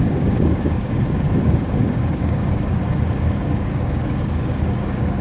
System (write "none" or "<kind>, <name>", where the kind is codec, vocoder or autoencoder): codec, DAC